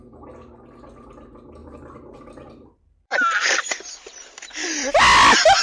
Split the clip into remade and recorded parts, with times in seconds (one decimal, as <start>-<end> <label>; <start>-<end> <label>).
0.0-1.6 recorded; 1.6-5.0 remade; 5.0-5.6 recorded